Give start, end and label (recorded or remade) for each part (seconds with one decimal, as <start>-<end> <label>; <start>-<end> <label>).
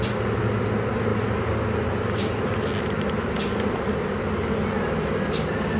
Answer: 0.0-5.8 recorded